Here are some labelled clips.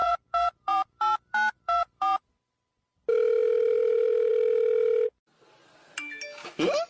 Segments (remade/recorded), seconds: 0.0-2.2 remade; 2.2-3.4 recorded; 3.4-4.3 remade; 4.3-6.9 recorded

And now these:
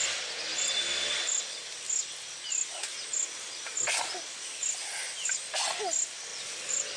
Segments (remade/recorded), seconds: 0.0-0.5 recorded; 0.5-1.6 remade; 1.6-6.3 recorded; 6.3-7.0 remade

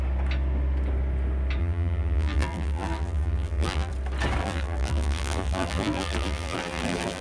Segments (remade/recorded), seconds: 0.0-1.6 recorded; 1.6-3.9 remade; 3.9-4.4 recorded; 4.4-7.2 remade